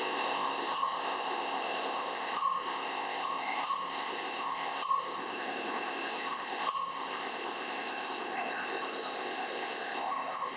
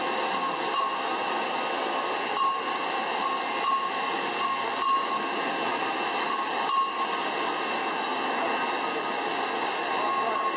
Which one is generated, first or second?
first